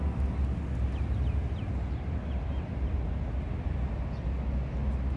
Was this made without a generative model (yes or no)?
yes